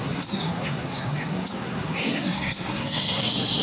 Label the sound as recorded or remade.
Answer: remade